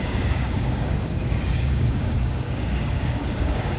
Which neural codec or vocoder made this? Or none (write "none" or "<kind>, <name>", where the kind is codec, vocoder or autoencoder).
codec, DAC